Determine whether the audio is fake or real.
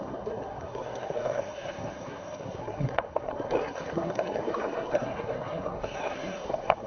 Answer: fake